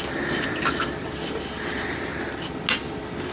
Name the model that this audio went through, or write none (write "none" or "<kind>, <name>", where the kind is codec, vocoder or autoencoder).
none